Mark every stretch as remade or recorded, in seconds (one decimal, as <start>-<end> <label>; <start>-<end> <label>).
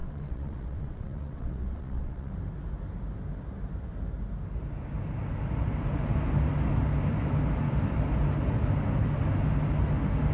0.0-2.3 remade; 2.3-10.3 recorded